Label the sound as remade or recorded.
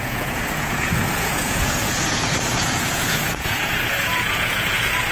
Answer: remade